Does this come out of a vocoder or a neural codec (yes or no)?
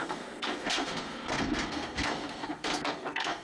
yes